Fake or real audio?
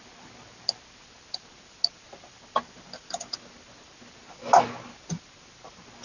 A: real